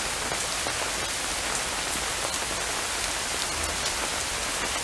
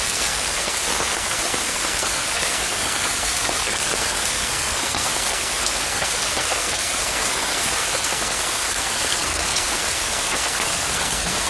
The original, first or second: first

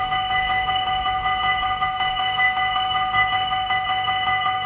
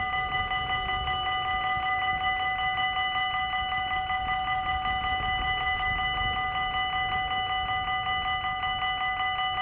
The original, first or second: second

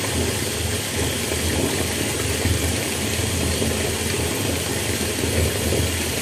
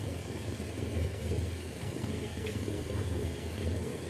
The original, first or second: first